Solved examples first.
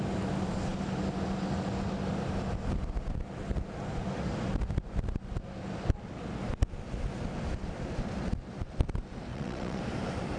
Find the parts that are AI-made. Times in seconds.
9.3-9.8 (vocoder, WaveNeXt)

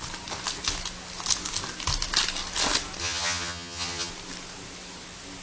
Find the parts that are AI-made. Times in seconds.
3.0-4.1 (vocoder, HiFi-GAN)

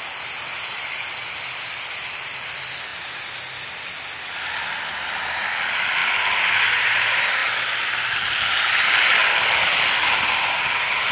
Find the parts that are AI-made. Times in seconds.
0.0-2.9 (vocoder, BigVGAN v2); 3.6-6.0; 6.8-9.2; 9.9-11.1

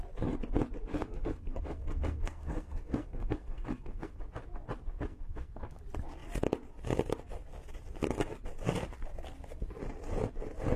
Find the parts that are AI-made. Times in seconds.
0.9-4.2 (codec, SNAC); 5.1-5.8

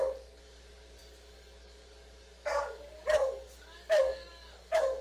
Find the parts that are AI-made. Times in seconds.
0.0-5.0 (codec, DAC)

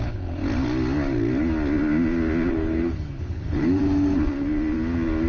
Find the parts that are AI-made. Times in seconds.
0.0-0.4 (codec, HILCodec); 2.5-3.8

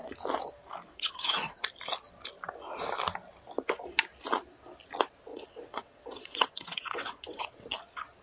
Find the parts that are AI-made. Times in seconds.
0.9-1.6 (vocoder, WaveNeXt); 5.3-7.5